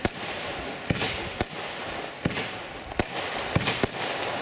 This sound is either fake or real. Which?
real